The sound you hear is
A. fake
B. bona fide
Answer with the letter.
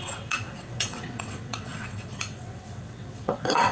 A